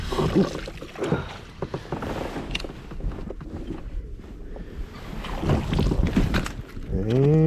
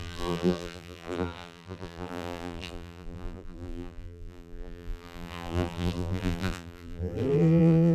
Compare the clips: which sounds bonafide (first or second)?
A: first